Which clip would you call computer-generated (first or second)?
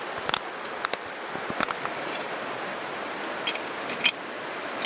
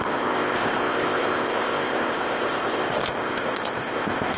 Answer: second